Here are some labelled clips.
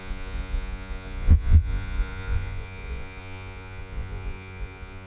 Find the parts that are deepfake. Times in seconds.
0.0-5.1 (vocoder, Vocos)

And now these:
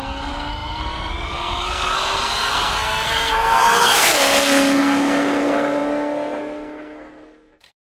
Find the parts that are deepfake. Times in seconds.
0.0-7.8 (codec, SNAC)

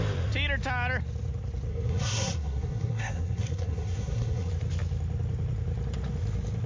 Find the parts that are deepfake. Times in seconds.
1.7-4.5 (codec, SNAC)

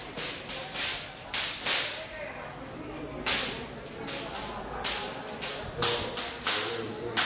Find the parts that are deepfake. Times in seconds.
none